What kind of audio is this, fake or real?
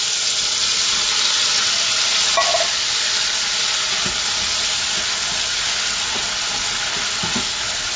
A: real